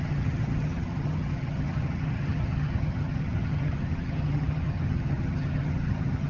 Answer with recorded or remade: remade